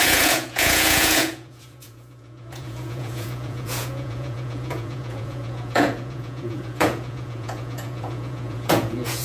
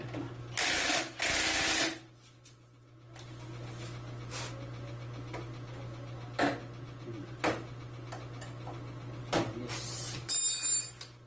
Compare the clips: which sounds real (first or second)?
second